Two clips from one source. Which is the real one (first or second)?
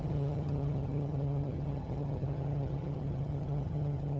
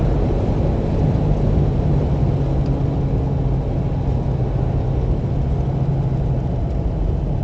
second